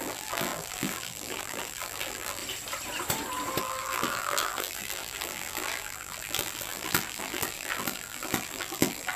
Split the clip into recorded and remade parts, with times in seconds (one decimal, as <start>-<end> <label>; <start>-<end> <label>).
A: 0.0-2.4 remade; 2.4-3.6 recorded; 3.6-9.2 remade